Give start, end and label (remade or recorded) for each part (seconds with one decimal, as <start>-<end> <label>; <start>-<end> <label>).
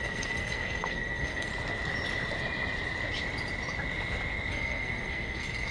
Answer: 0.0-1.5 remade; 1.5-4.5 recorded; 4.5-5.7 remade